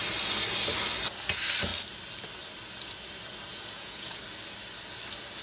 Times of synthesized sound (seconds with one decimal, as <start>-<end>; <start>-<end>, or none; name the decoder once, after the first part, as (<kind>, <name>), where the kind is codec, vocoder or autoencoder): 3.5-4.2 (vocoder, Vocos)